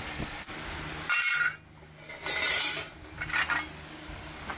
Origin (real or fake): real